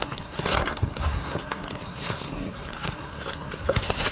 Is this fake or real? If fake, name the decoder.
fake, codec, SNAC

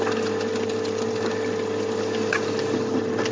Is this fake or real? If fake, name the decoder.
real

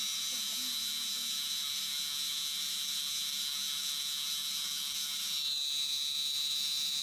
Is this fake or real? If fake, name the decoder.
fake, autoencoder, DAC-VAE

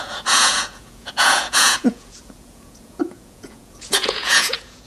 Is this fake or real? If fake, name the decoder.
fake, vocoder, Vocos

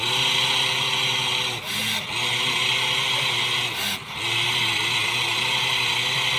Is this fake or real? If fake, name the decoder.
real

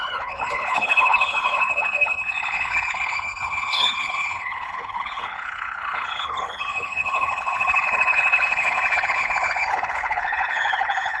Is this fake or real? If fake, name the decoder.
fake, codec, HILCodec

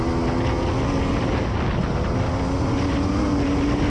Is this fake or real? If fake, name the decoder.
real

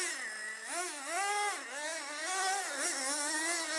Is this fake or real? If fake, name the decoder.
real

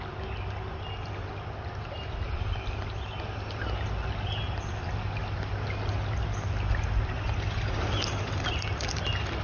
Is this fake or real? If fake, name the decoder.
real